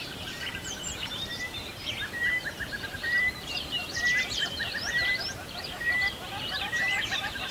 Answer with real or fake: fake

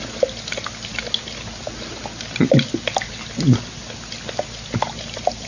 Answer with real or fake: real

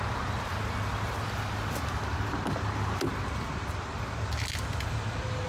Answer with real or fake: real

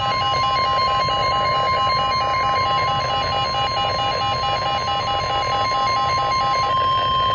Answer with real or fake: real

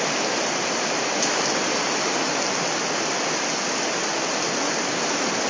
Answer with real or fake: real